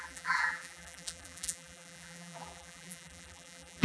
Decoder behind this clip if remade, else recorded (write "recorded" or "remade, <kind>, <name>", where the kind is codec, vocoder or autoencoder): remade, vocoder, BigVGAN v2